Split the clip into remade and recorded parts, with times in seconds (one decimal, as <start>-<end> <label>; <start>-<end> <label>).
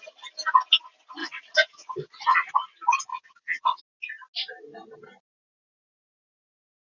0.0-1.2 recorded; 1.2-2.5 remade; 2.5-3.1 recorded; 3.1-3.8 remade; 3.8-6.9 recorded